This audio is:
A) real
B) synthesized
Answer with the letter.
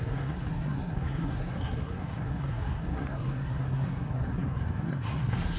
B